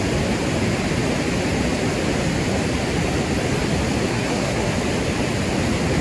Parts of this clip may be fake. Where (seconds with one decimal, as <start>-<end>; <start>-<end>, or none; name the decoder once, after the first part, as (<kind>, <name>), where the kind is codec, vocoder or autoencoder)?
4.1-4.8 (codec, SNAC)